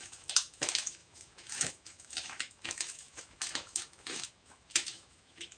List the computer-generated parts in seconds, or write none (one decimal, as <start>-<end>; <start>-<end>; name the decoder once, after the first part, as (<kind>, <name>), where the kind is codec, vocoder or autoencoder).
0.0-5.6 (autoencoder, DAC-VAE)